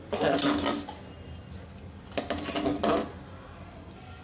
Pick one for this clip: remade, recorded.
recorded